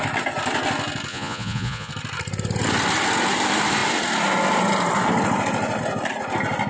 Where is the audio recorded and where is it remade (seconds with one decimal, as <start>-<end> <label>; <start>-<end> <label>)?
0.0-1.1 recorded; 1.1-1.9 remade; 1.9-6.7 recorded